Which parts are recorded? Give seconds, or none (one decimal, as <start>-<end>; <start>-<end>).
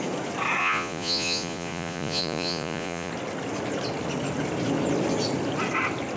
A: 0.0-0.6; 3.1-6.2